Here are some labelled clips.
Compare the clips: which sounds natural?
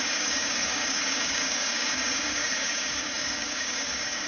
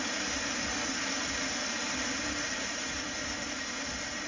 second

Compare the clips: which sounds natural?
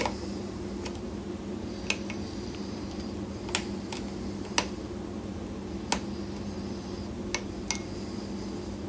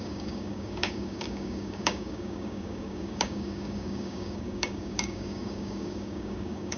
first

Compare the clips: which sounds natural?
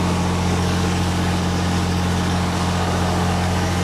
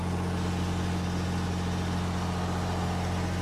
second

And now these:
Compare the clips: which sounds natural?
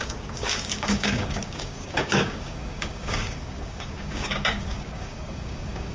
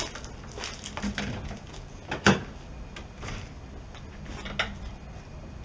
second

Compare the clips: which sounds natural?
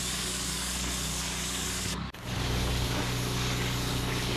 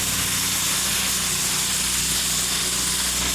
second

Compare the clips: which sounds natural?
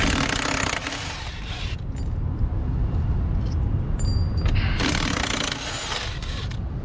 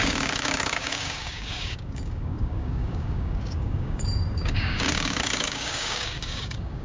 first